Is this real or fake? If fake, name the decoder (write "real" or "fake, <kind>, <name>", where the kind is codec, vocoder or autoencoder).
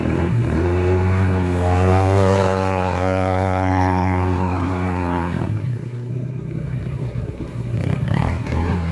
fake, codec, SNAC